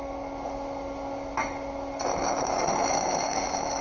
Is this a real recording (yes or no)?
yes